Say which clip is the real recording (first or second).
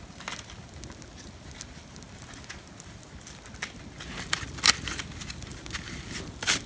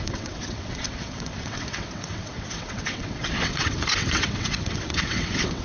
first